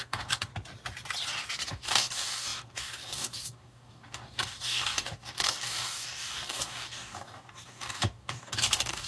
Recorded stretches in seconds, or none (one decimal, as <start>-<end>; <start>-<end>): 0.5-1.7

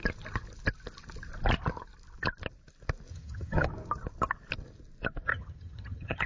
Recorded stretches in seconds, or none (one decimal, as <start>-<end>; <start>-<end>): 0.0-3.1; 3.7-5.3

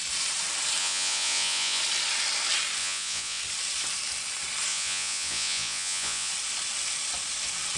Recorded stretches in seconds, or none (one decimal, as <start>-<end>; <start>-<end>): 0.0-0.8; 1.8-2.8; 3.4-4.7; 6.3-7.8

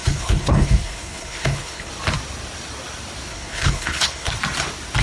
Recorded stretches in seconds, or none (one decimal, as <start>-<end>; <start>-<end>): 1.9-3.3; 4.3-5.0

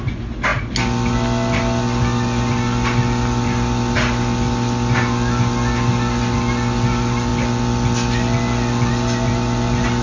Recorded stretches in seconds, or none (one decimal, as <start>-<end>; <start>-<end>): 0.0-10.0

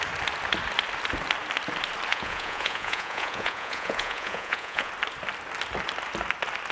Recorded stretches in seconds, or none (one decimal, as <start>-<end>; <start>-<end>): 0.0-2.1; 4.9-6.7

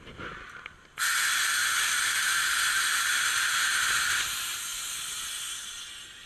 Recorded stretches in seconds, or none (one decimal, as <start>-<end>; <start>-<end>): 0.0-6.3

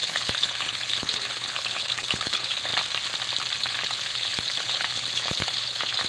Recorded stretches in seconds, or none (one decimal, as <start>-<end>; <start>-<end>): 2.7-3.6